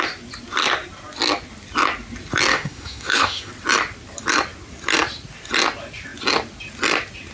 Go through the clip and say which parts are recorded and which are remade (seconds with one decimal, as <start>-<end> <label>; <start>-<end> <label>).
0.0-2.5 recorded; 2.5-3.5 remade; 3.5-7.3 recorded